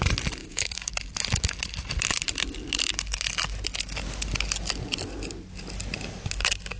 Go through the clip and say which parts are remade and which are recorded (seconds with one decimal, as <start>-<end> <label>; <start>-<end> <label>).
0.0-0.4 recorded; 0.4-0.9 remade; 0.9-6.8 recorded